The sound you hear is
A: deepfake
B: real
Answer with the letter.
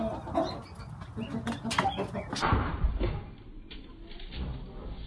B